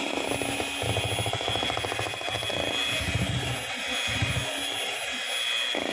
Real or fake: real